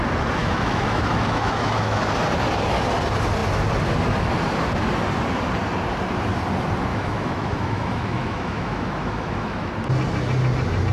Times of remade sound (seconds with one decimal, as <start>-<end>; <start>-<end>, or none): 0.4-2.0; 6.9-9.7